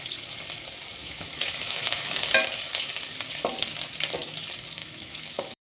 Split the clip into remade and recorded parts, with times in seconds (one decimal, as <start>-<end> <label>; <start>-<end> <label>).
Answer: 0.0-1.0 recorded; 1.0-2.2 remade; 2.2-4.8 recorded; 4.8-5.6 remade

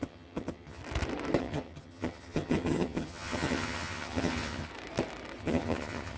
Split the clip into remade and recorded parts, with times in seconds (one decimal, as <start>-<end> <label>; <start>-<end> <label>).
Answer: 0.0-0.8 remade; 0.8-1.4 recorded; 1.4-4.7 remade; 4.7-5.4 recorded; 5.4-6.2 remade

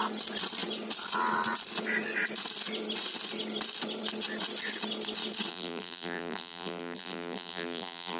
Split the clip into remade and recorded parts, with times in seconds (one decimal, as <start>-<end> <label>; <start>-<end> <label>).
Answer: 0.0-5.5 recorded; 5.5-8.2 remade